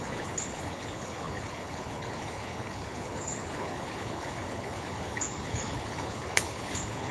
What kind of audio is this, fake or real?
fake